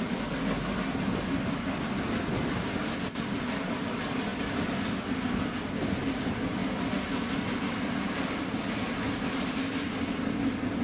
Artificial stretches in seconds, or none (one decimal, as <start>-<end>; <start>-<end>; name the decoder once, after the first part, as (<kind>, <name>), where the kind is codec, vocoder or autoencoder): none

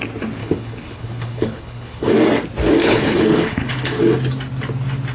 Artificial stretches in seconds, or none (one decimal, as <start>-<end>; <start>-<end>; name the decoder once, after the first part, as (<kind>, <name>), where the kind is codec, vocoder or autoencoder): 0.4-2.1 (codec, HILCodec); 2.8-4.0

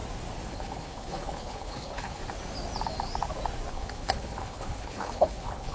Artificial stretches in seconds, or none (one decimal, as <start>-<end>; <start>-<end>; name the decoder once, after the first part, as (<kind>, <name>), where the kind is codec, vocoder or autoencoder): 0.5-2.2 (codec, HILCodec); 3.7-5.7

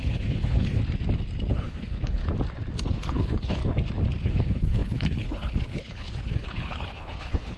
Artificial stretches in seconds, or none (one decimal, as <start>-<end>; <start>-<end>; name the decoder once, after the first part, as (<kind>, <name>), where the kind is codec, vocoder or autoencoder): 0.0-0.8 (codec, HILCodec); 1.5-2.2; 2.9-3.6; 4.2-7.6